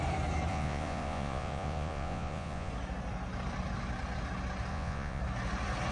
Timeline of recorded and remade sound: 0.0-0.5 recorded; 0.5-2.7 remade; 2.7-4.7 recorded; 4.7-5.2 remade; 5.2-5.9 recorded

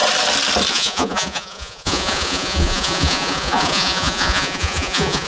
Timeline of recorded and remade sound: 0.0-0.7 recorded; 0.7-5.3 remade

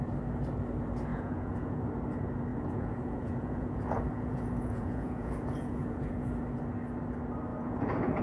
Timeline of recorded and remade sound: 0.0-1.1 recorded; 1.1-1.9 remade; 1.9-2.5 recorded; 2.5-6.3 remade; 6.3-7.5 recorded; 7.5-8.2 remade

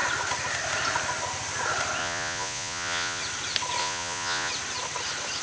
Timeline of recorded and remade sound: 0.0-2.0 recorded; 2.0-3.2 remade; 3.2-3.8 recorded; 3.8-4.5 remade; 4.5-5.4 recorded

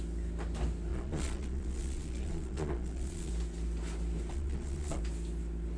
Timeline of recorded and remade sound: 0.0-0.9 recorded; 0.9-3.3 remade; 3.3-4.3 recorded; 4.3-5.0 remade; 5.0-5.8 recorded

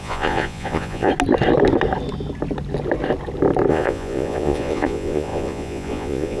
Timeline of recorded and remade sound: 0.0-1.1 remade; 1.1-3.7 recorded; 3.7-6.4 remade

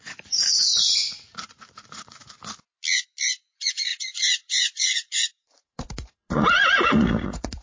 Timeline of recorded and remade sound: 0.0-2.2 remade; 2.2-3.3 recorded; 3.3-7.6 remade